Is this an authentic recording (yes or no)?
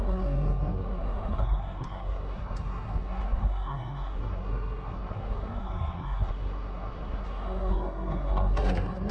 no